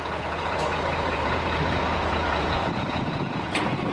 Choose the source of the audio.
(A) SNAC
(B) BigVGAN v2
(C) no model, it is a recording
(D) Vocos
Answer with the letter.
D